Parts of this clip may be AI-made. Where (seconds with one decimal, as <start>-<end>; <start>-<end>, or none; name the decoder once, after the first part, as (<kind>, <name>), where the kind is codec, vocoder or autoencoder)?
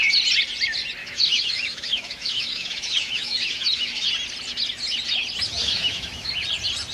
1.0-4.1 (autoencoder, DAC-VAE); 5.6-6.3